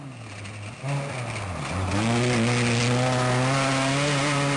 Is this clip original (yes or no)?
yes